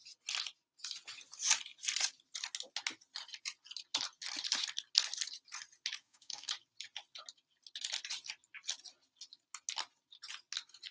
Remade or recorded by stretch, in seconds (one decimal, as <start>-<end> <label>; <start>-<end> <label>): 0.0-6.0 recorded; 6.0-6.5 remade; 6.5-10.9 recorded

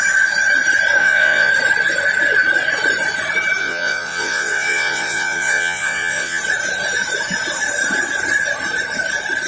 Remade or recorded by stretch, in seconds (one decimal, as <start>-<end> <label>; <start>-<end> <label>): 0.0-1.0 recorded; 1.0-1.5 remade; 1.5-3.6 recorded; 3.6-6.4 remade; 6.4-9.5 recorded